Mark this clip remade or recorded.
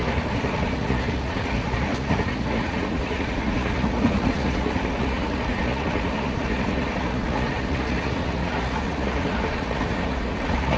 remade